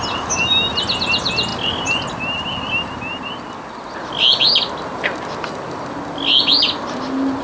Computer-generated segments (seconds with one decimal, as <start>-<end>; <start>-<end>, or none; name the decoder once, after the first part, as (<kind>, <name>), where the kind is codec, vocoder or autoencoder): none